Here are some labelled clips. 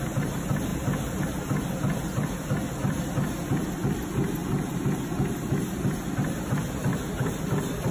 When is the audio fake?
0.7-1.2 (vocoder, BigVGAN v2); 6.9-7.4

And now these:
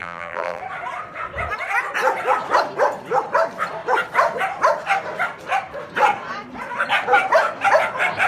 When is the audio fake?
0.0-0.6 (vocoder, BigVGAN v2)

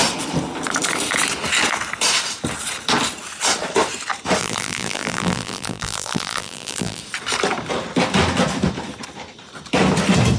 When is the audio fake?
4.4-7.0 (vocoder, BigVGAN v2)

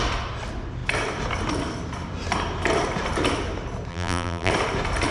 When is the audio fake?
3.9-4.5 (vocoder, BigVGAN v2)

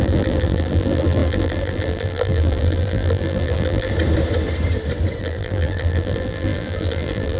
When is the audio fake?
0.0-3.9 (vocoder, BigVGAN v2); 5.2-7.4

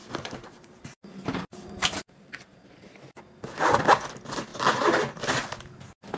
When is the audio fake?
0.0-2.8 (vocoder, BigVGAN v2)

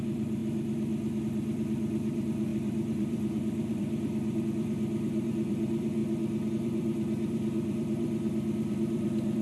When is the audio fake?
0.0-0.4 (vocoder, BigVGAN v2); 1.2-6.0; 6.5-9.4